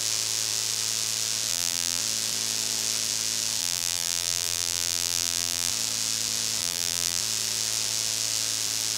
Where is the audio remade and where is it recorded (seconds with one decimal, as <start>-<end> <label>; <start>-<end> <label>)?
0.0-1.5 recorded; 1.5-2.0 remade; 2.0-3.6 recorded; 3.6-5.7 remade; 5.7-6.6 recorded; 6.6-7.2 remade; 7.2-9.0 recorded